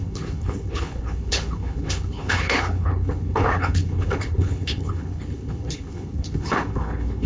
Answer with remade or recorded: remade